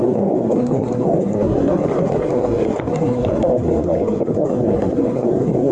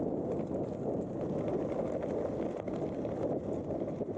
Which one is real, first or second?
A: second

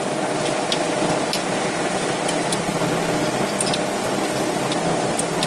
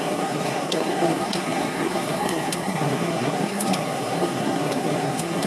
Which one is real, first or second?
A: first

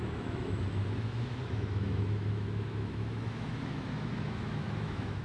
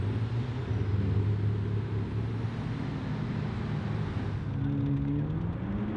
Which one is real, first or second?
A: second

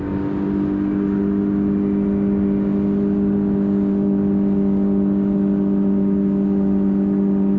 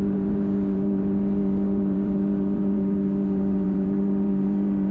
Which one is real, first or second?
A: first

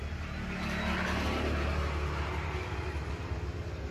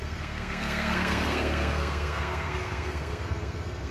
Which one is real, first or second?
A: first